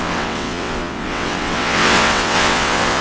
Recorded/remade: remade